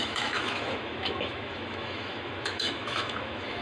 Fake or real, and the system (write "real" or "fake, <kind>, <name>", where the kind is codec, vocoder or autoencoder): fake, autoencoder, DAC-VAE